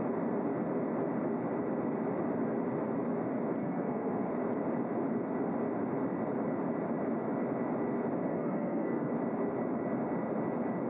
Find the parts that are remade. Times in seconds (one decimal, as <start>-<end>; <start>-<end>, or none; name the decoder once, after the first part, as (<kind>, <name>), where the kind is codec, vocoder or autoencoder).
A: 3.6-4.3 (codec, SNAC); 8.3-9.1